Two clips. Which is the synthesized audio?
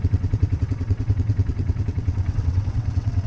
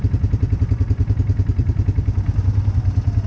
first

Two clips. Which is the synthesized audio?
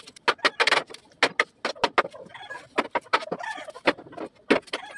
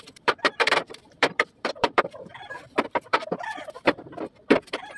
second